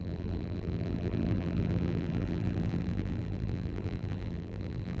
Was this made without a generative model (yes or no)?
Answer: no